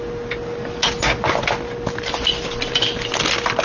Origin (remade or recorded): recorded